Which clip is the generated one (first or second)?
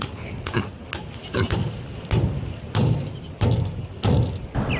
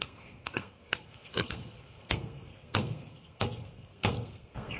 second